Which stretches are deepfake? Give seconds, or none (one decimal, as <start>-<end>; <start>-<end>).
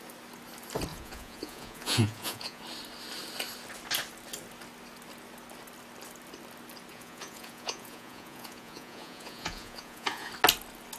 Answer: 0.9-2.6; 6.9-10.3